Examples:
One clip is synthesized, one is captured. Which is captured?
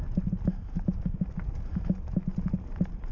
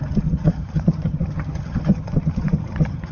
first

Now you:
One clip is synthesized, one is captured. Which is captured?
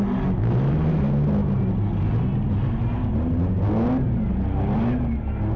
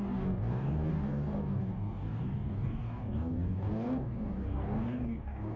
first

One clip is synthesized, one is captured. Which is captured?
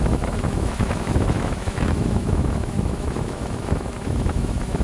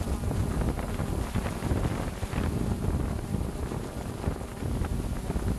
second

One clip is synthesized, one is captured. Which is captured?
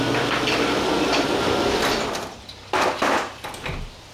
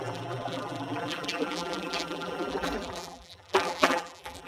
first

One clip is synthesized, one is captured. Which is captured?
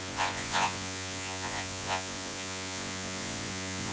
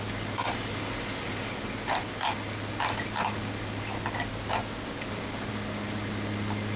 second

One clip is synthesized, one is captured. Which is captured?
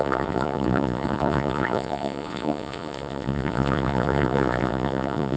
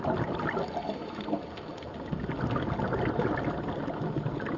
second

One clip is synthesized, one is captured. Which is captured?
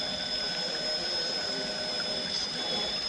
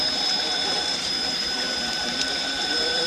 first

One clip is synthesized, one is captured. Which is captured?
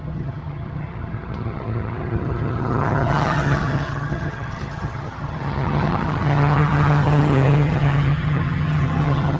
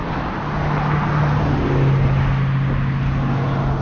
second